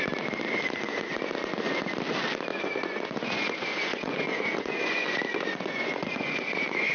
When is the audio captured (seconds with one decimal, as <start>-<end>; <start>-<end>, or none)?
0.0-2.5